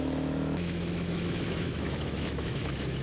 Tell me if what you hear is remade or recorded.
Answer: remade